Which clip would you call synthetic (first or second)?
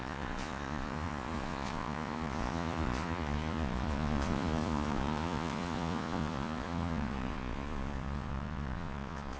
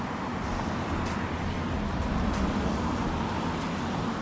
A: first